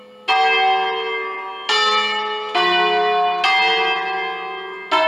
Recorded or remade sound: recorded